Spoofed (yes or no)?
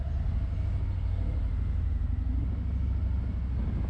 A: no